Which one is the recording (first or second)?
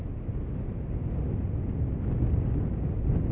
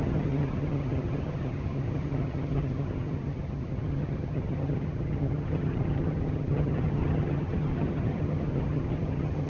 first